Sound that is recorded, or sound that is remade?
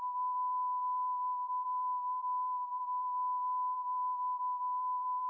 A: remade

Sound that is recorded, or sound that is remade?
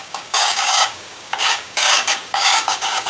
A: remade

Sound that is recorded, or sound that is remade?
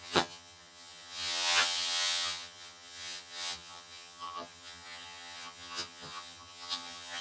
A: remade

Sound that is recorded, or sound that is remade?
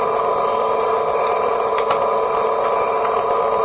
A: recorded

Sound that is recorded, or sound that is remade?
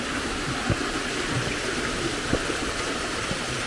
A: recorded